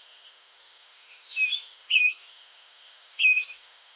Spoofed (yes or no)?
yes